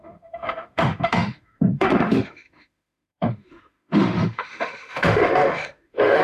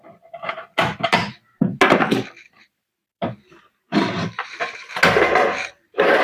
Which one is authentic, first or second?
second